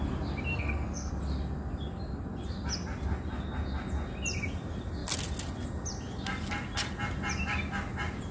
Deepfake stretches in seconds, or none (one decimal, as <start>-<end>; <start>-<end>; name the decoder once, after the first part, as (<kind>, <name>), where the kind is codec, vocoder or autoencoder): 0.5-1.1 (codec, SNAC)